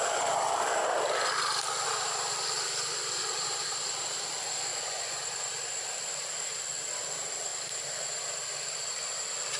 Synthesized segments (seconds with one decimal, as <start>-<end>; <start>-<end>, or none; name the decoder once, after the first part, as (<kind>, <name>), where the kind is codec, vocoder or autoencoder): 4.7-5.2 (vocoder, Vocos)